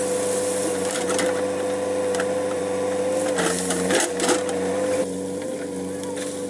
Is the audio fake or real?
fake